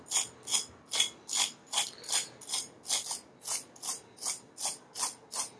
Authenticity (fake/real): real